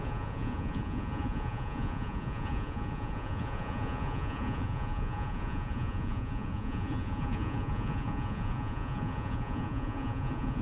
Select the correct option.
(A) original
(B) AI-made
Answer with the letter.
B